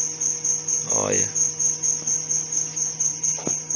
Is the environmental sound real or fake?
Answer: real